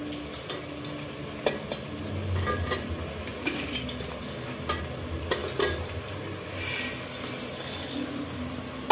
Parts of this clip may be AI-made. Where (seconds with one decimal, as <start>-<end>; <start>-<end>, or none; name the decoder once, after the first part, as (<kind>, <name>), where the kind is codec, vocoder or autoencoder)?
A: none